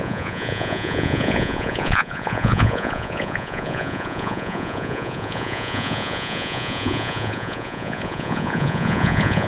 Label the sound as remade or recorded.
remade